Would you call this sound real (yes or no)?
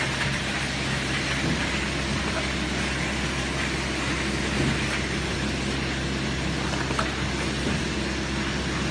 yes